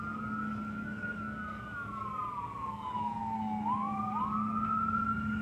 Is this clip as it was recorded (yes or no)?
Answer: no